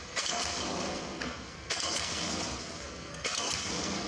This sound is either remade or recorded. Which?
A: remade